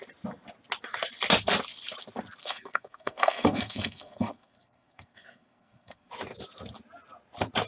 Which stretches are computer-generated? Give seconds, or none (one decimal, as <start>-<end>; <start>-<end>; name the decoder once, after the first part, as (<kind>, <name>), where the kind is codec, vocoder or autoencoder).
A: 2.4-6.1 (codec, SNAC)